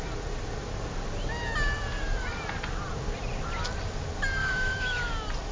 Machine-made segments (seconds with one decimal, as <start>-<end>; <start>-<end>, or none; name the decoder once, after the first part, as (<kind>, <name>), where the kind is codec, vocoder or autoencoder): 4.4-5.1 (autoencoder, DAC-VAE)